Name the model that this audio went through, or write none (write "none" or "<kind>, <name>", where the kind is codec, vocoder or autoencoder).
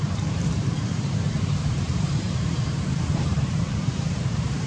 vocoder, BigVGAN v2